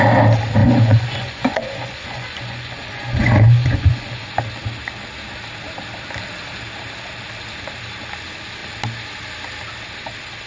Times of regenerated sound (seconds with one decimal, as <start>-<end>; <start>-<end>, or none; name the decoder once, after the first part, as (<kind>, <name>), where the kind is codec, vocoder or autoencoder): 0.6-4.4 (vocoder, Vocos)